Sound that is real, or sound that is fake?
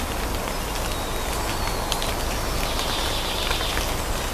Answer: real